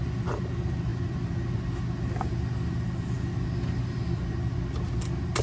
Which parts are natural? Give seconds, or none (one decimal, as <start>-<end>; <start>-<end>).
0.0-5.4